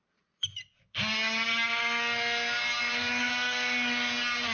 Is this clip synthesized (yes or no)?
no